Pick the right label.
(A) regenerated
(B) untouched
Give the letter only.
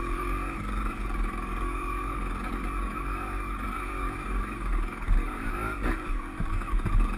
A